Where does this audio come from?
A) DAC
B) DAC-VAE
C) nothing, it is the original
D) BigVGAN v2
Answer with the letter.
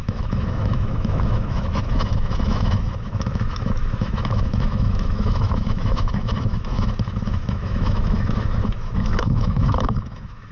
B